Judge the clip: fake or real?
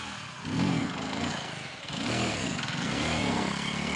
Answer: fake